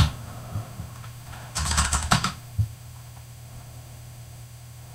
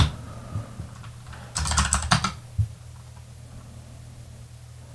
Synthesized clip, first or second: first